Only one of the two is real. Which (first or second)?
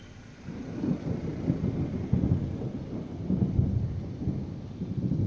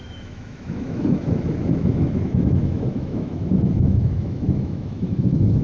first